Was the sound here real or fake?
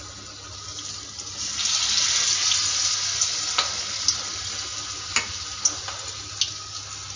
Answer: real